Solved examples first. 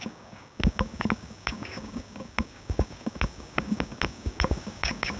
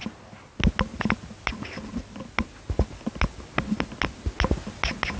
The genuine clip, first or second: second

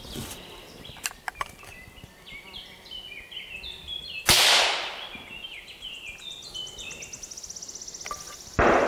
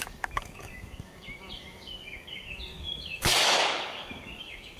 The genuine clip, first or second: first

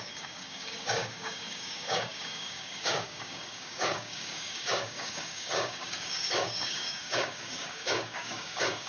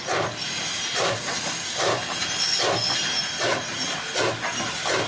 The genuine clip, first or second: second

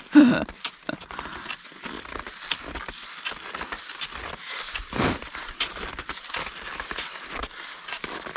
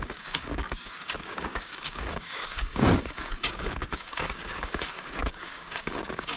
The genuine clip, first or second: first